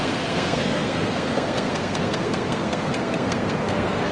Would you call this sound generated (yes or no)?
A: yes